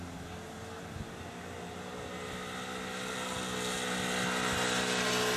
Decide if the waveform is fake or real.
real